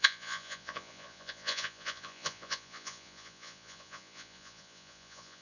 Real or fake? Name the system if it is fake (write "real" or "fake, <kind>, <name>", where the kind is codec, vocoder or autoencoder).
fake, vocoder, Vocos